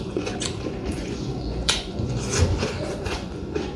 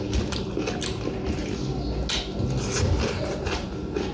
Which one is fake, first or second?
first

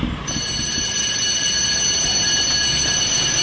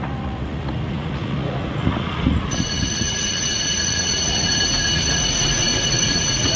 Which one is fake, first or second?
second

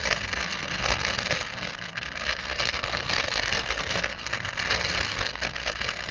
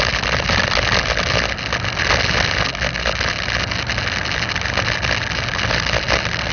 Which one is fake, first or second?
first